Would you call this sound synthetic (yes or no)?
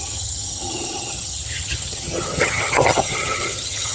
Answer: yes